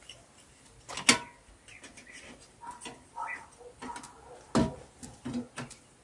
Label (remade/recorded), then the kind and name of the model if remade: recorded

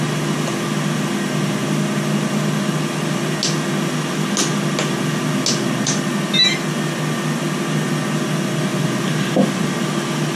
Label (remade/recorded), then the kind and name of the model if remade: recorded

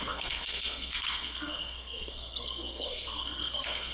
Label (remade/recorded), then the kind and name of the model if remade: remade, codec, SNAC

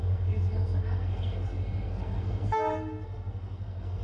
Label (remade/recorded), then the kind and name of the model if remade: remade, codec, SNAC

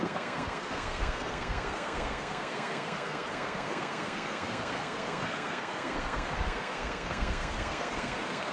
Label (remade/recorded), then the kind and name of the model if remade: remade, codec, SNAC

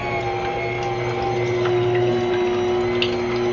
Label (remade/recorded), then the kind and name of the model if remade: recorded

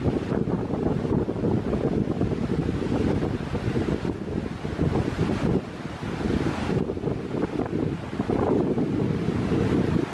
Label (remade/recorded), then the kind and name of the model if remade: recorded